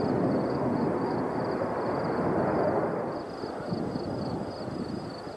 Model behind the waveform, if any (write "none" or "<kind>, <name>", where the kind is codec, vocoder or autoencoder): none